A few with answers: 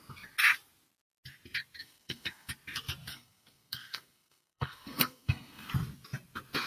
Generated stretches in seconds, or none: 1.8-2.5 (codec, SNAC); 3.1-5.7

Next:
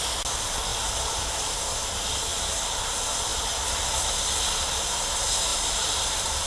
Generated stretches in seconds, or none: 0.7-1.6 (vocoder, BigVGAN v2); 2.3-2.8; 5.5-6.5

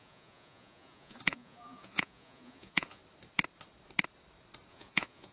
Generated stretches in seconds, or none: 0.0-3.0 (vocoder, Vocos); 4.7-5.3

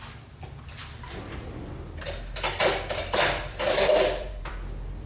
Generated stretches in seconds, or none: 0.8-1.6 (vocoder, BigVGAN v2); 3.0-4.5